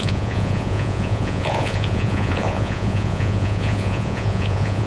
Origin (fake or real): fake